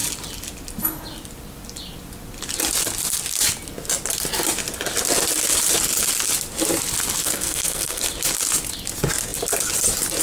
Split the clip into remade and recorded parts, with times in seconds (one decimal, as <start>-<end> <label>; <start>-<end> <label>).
0.0-7.2 recorded; 7.2-8.0 remade; 8.0-10.2 recorded